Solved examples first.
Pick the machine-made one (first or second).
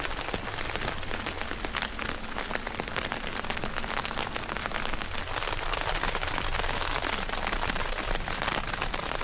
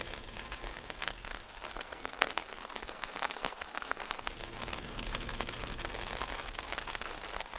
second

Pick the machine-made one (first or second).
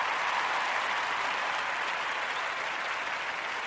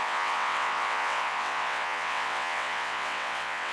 second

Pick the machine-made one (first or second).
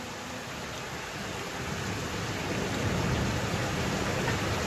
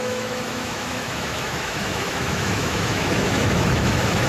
second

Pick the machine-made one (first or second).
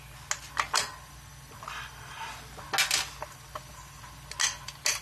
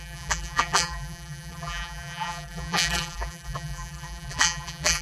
second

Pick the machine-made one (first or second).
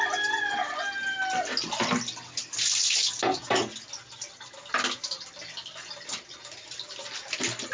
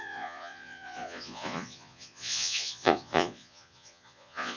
second